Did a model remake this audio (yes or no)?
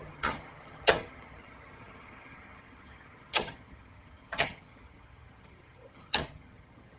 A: yes